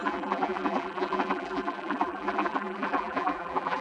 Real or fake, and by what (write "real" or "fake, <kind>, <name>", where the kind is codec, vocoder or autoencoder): fake, vocoder, BigVGAN v2